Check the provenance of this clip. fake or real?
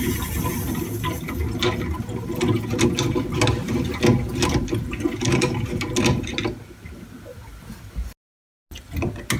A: real